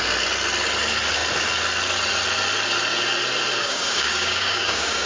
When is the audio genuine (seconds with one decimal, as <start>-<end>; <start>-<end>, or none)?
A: 0.0-3.6